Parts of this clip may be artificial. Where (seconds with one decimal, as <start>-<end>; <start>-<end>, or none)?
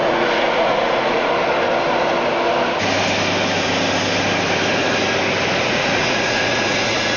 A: 0.0-1.3; 5.6-7.2